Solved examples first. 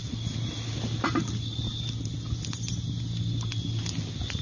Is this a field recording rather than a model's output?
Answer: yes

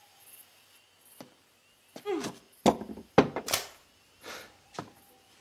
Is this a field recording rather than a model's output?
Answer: yes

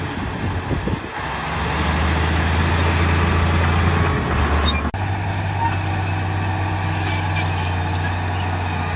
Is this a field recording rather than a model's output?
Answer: yes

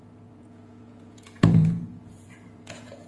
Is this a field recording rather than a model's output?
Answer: no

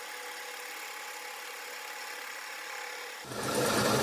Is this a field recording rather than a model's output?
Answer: yes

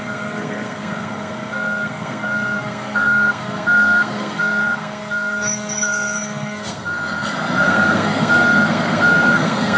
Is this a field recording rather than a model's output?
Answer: no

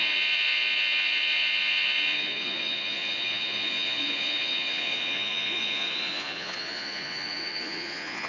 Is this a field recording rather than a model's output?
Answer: no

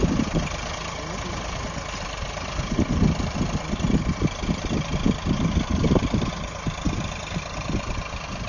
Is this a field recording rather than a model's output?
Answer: yes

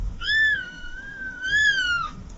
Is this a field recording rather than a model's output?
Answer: no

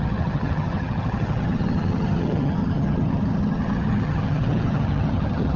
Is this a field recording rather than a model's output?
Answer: no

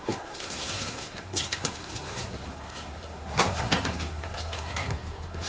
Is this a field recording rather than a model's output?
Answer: no